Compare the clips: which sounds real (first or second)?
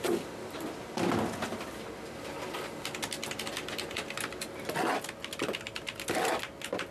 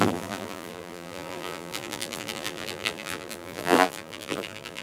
first